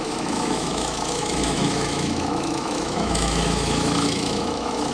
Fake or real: fake